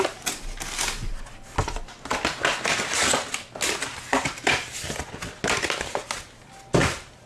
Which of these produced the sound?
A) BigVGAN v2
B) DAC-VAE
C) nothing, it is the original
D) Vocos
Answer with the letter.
C